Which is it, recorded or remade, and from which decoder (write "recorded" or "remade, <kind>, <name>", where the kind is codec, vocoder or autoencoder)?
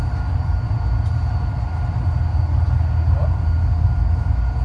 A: recorded